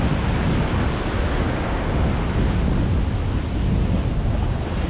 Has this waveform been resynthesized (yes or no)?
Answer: no